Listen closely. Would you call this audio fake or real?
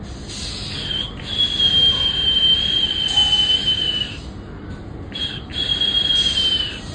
real